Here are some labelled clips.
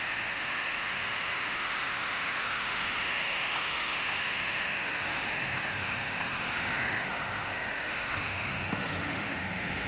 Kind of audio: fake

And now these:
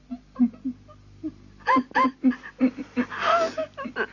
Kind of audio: real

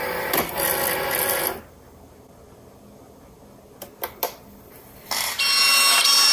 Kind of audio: real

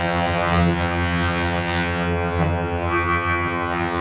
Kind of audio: fake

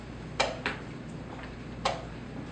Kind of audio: real